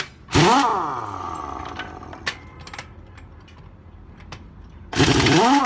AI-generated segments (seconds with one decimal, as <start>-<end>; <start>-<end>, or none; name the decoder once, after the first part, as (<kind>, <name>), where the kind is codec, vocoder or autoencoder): none